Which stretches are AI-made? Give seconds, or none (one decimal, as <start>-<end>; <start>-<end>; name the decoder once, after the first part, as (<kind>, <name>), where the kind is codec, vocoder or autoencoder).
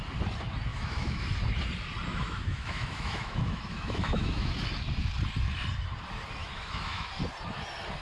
0.7-1.2 (autoencoder, DAC-VAE); 2.1-4.5; 6.4-7.1